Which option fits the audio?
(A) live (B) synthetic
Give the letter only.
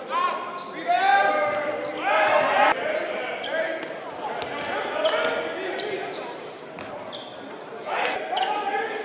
A